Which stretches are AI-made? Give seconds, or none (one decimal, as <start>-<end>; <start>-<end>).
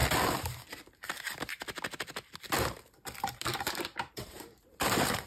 3.2-5.3